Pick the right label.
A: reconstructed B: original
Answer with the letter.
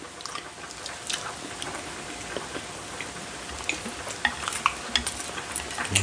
B